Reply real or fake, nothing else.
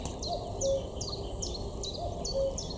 real